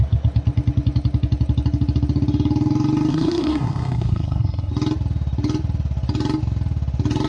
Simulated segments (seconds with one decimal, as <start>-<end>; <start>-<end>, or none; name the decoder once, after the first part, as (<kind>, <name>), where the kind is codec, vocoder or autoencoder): 3.1-4.7 (codec, SNAC)